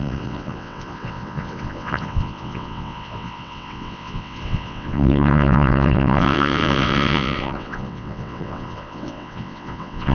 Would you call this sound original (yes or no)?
no